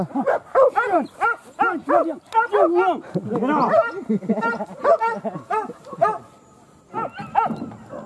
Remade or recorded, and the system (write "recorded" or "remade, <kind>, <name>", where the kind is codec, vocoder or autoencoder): recorded